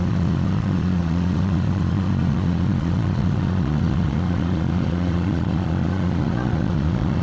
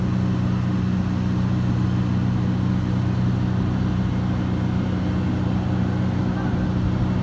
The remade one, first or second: first